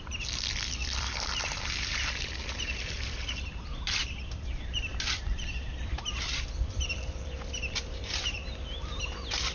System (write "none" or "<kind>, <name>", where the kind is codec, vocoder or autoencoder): vocoder, BigVGAN v2